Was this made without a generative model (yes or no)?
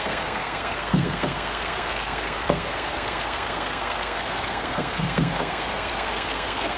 no